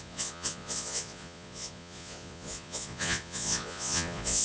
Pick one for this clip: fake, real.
fake